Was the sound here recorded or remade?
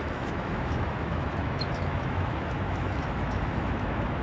remade